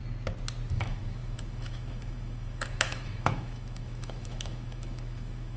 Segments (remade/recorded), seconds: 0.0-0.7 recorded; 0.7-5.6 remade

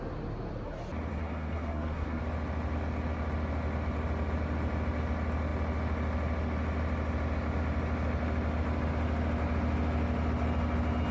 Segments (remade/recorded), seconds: 0.0-1.1 recorded; 1.1-2.2 remade; 2.2-11.1 recorded

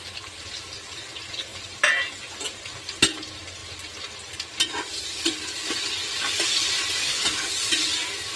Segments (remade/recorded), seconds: 0.0-7.0 recorded; 7.0-7.5 remade; 7.5-8.4 recorded

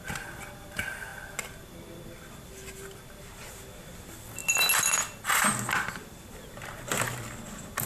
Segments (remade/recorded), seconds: 0.0-7.9 recorded